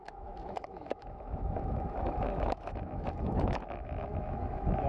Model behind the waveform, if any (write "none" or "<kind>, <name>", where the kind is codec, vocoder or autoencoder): autoencoder, DAC-VAE